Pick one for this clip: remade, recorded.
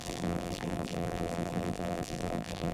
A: remade